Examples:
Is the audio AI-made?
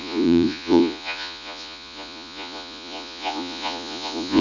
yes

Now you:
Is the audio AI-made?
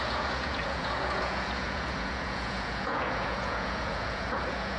yes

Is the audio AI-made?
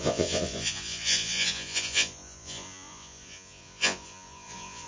yes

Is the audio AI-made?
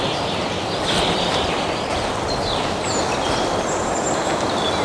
no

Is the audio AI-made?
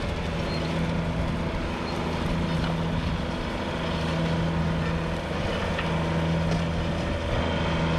no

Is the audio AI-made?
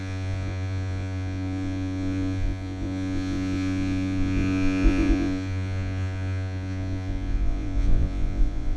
yes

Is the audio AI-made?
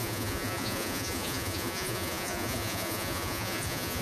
yes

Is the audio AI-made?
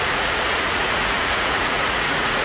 yes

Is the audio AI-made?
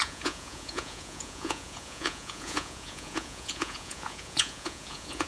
yes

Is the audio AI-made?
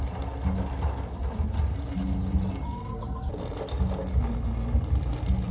no